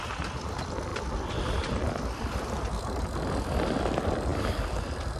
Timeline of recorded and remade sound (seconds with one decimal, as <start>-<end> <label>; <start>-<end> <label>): 0.0-5.2 recorded